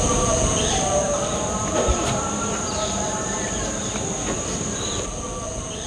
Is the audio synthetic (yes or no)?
yes